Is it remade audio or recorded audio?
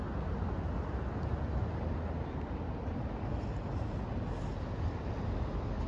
recorded